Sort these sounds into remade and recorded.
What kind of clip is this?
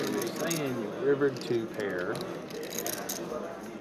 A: recorded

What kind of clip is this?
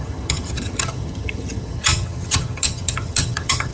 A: remade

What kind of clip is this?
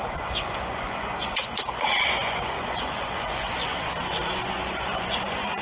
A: remade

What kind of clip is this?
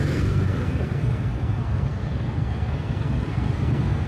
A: remade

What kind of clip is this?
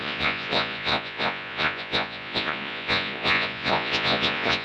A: remade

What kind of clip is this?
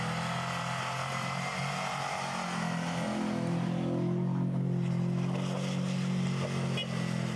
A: recorded